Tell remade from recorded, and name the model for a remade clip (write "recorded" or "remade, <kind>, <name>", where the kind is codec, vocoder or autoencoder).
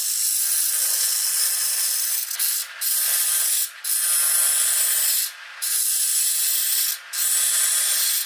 recorded